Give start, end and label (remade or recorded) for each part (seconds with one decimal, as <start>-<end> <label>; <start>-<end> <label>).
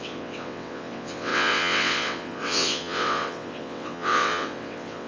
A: 0.0-5.1 remade